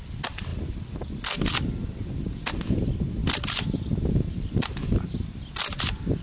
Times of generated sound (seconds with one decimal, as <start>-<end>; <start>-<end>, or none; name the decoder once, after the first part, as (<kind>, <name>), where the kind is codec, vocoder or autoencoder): none